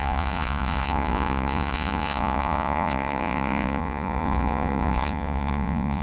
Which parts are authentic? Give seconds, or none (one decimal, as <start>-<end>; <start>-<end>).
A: none